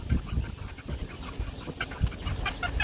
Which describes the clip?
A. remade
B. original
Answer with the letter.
B